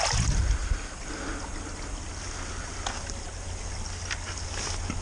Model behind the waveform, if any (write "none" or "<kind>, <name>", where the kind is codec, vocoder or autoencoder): none